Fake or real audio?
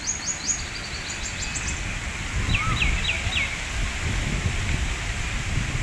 real